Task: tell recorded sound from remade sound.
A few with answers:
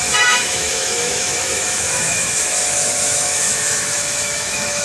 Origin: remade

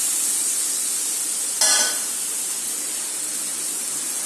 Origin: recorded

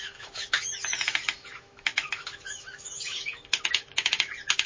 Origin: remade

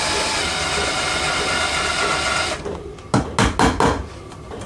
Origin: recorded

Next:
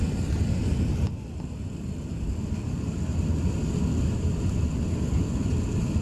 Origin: recorded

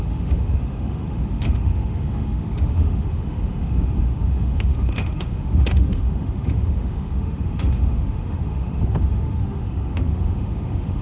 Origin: remade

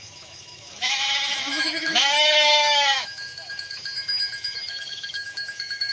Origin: remade